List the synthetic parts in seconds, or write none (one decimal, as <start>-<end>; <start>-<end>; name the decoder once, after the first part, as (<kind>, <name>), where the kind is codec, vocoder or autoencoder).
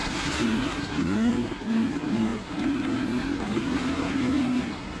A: 0.0-5.0 (codec, SNAC)